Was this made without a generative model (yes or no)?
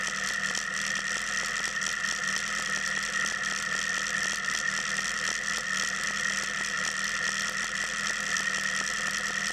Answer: yes